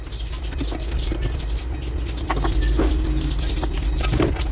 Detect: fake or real fake